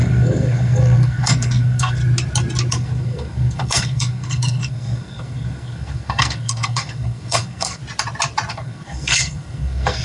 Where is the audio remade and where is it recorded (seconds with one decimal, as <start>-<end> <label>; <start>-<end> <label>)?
0.0-2.0 remade; 2.0-2.7 recorded; 2.7-7.8 remade; 7.8-8.5 recorded; 8.5-10.0 remade